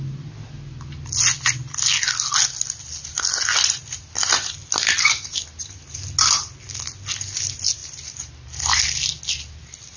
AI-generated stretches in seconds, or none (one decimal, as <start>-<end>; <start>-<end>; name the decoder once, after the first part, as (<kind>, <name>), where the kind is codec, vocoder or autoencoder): none